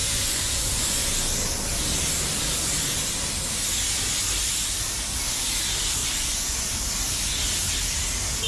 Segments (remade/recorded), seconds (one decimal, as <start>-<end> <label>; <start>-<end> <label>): 0.0-1.1 remade; 1.1-6.0 recorded; 6.0-6.7 remade; 6.7-8.5 recorded